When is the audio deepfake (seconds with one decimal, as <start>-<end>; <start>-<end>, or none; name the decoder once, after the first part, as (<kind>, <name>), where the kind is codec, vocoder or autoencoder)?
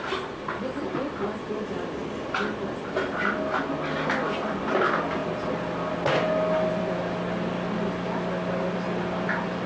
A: none